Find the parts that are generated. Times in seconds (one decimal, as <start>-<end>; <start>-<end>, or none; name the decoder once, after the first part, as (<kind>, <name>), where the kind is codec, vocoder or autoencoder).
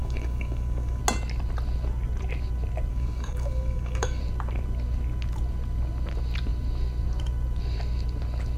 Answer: 0.0-1.0 (codec, DAC); 2.9-4.2